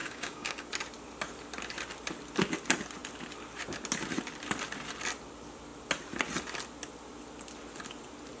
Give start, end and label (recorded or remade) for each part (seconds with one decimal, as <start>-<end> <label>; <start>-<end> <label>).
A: 0.0-0.7 remade; 0.7-8.4 recorded